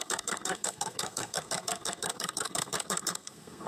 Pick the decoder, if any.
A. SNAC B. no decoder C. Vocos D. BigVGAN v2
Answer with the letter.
A